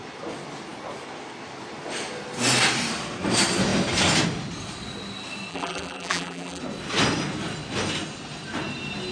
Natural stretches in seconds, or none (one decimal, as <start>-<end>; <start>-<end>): 0.0-5.5; 6.6-9.1